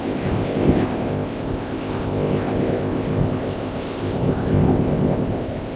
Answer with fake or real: fake